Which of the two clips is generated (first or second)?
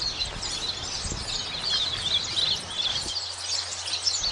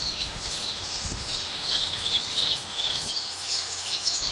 second